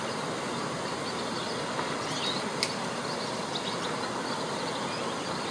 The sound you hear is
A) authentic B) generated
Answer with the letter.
A